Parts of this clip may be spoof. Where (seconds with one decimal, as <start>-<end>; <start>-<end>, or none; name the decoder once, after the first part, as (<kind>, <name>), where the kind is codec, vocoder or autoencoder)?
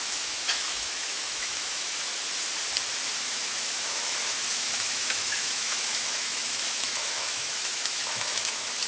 0.0-2.1 (autoencoder, DAC-VAE); 3.3-8.9